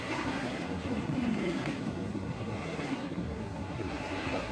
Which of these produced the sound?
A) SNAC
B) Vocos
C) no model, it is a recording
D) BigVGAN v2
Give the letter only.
A